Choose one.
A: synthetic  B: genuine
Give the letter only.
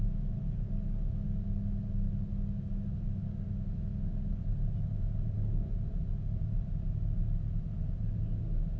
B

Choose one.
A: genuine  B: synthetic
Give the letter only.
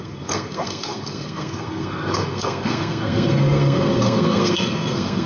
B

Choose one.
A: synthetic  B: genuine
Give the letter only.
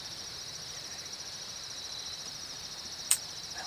A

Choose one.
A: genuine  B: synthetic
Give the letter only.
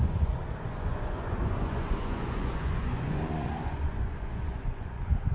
B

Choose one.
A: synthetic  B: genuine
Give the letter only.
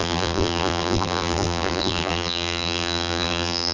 A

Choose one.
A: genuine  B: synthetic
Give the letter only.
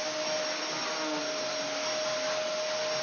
A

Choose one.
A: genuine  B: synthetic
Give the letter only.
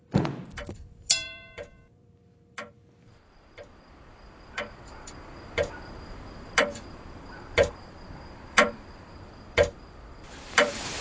B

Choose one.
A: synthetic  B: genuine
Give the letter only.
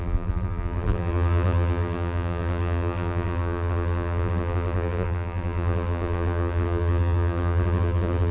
A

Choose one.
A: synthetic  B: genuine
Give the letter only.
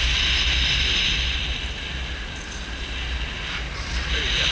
B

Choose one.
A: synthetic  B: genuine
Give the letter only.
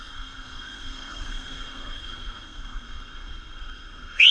A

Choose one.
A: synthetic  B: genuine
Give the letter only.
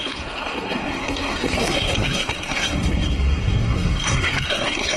A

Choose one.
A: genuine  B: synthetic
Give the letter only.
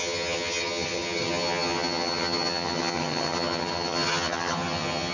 B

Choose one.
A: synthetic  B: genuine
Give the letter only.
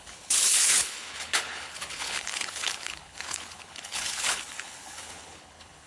A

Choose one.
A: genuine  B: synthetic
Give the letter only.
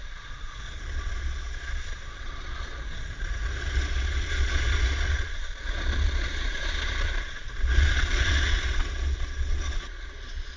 B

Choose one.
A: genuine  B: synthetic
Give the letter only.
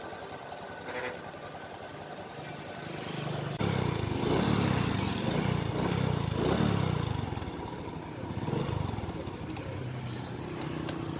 A